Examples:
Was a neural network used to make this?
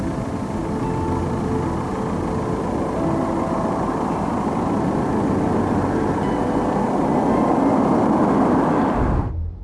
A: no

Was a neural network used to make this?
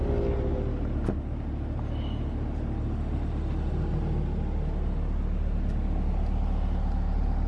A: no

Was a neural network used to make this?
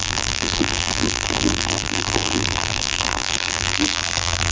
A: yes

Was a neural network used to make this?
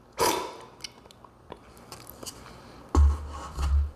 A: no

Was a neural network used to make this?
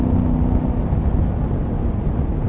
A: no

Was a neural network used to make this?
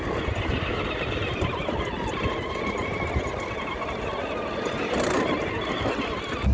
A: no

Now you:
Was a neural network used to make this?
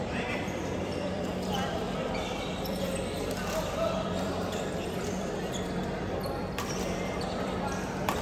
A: yes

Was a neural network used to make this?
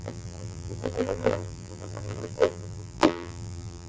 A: yes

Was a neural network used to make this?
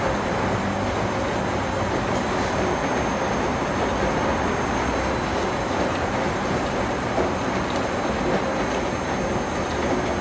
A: no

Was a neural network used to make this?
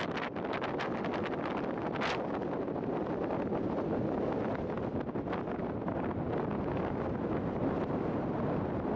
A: no